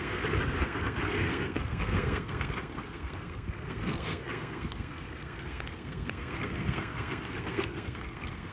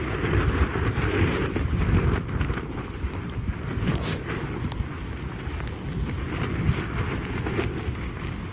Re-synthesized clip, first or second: first